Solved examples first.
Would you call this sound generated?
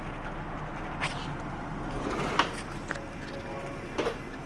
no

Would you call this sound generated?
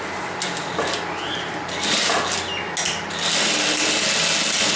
no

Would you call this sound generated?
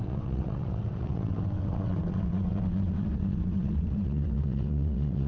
yes